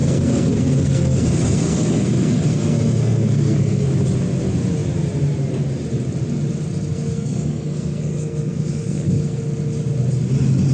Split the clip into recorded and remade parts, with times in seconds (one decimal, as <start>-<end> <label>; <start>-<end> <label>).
0.0-3.9 remade; 3.9-6.9 recorded; 6.9-9.4 remade; 9.4-10.7 recorded